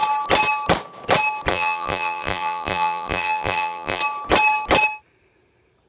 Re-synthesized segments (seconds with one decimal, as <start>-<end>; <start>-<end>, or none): 1.5-4.0